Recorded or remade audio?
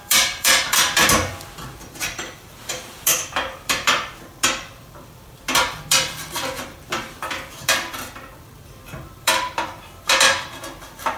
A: remade